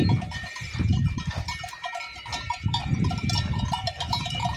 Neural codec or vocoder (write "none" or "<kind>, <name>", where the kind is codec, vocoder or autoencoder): vocoder, BigVGAN v2